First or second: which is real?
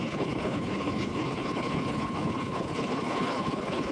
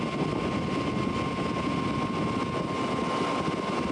second